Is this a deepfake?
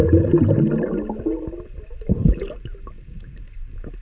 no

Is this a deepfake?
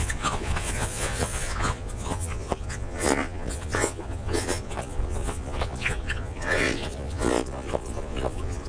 yes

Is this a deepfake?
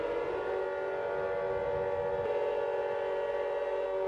no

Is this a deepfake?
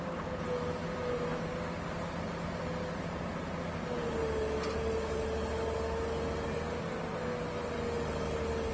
no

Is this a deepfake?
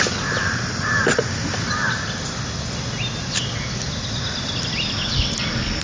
no